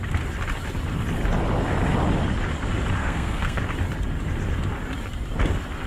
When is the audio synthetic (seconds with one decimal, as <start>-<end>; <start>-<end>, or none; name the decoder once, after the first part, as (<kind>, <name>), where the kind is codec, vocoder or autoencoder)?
3.0-3.6 (codec, SNAC)